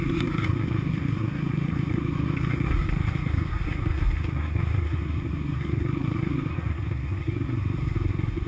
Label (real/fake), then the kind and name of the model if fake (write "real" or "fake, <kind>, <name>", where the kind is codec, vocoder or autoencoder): fake, codec, SNAC